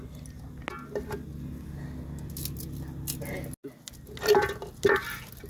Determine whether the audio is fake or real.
real